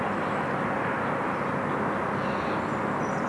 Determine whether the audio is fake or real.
real